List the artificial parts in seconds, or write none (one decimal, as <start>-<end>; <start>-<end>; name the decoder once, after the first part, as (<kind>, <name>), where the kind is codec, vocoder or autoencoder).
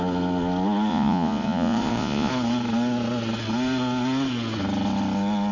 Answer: 0.9-2.3 (vocoder, Vocos)